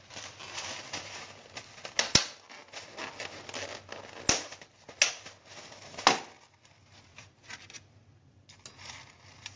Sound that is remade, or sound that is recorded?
recorded